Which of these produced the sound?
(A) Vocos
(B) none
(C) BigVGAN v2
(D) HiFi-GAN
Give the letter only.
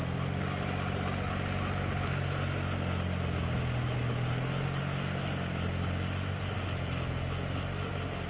B